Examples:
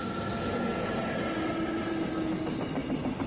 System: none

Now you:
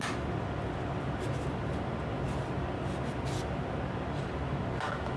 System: none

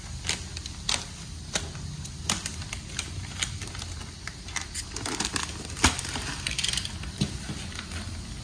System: none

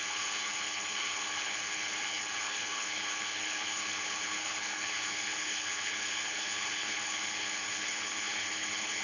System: codec, HILCodec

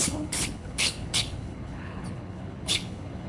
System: codec, HILCodec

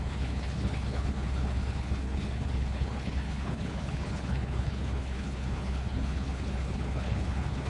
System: codec, HILCodec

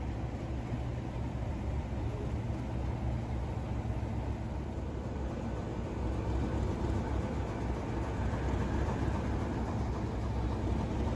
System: none